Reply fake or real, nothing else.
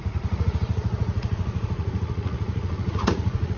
fake